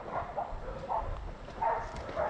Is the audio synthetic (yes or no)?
no